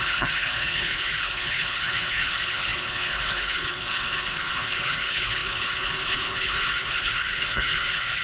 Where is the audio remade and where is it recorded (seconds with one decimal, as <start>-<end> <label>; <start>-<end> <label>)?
0.0-8.2 remade